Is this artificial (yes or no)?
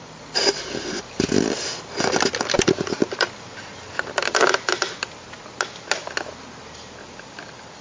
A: no